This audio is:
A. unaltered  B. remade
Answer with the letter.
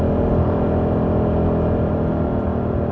A